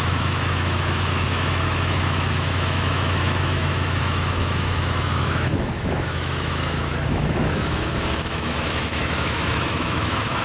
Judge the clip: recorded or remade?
remade